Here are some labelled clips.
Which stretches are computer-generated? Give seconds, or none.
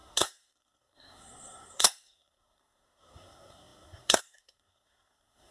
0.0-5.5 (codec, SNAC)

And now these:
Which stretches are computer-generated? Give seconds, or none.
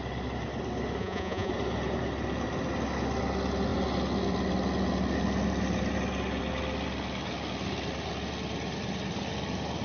1.0-1.5 (vocoder, Vocos)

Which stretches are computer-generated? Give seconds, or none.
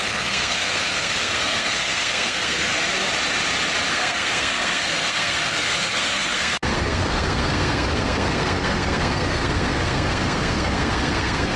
0.0-2.7 (codec, SNAC); 3.9-11.6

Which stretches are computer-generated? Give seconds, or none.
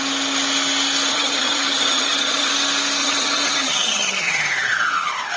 1.1-2.5 (vocoder, HiFi-GAN); 3.0-4.3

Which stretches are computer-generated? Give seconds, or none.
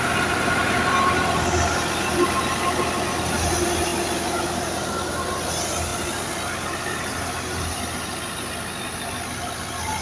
none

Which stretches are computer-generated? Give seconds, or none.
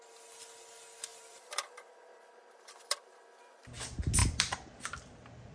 1.1-3.6 (vocoder, BigVGAN v2); 4.2-5.5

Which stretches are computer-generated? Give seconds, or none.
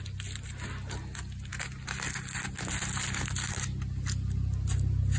none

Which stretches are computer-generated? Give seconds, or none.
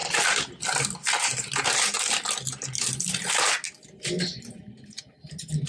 none